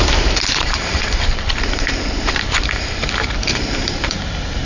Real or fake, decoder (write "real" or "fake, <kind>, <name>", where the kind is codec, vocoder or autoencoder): fake, vocoder, BigVGAN v2